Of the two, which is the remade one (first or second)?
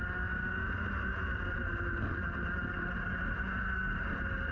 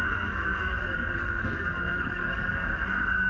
second